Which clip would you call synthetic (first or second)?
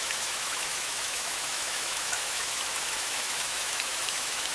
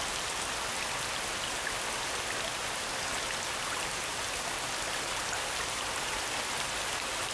first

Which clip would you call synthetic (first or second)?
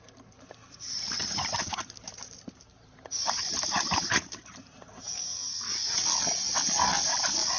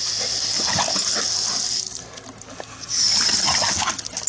first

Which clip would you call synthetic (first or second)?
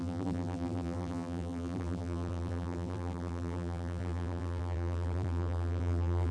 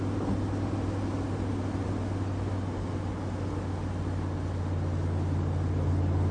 first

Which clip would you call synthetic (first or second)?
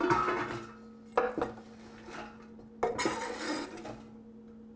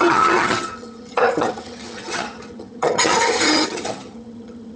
second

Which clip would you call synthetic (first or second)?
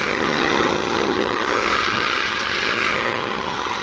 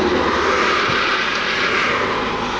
first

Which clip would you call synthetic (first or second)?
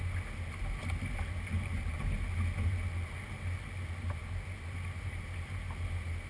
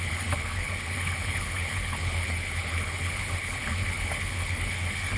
second